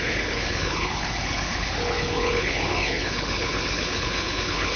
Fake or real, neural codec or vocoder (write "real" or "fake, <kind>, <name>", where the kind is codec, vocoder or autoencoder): fake, codec, HILCodec